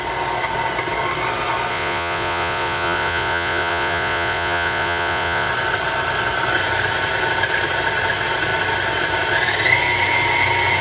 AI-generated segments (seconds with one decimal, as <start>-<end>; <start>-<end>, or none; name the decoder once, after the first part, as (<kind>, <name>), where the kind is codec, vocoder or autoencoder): 1.7-5.5 (vocoder, Vocos)